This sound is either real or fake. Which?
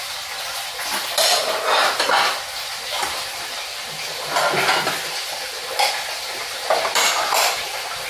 real